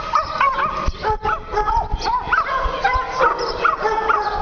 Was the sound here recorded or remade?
recorded